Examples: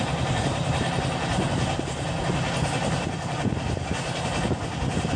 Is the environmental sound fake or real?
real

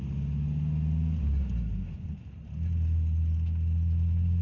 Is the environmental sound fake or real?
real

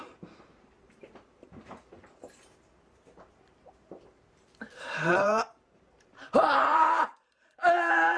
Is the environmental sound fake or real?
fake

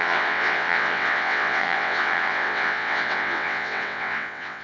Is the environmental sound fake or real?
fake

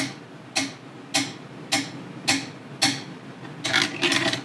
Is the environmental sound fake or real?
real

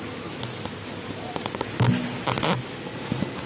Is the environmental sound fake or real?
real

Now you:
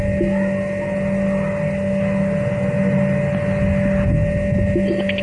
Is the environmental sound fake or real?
real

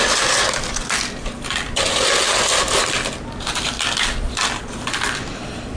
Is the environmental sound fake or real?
real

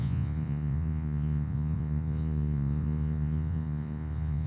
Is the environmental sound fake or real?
fake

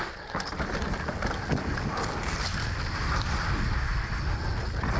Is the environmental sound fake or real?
real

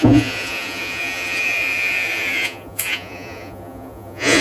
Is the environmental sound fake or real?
fake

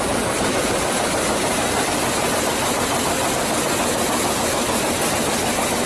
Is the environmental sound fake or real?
fake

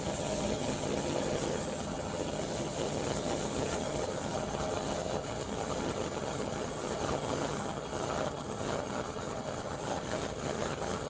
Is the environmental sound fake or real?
fake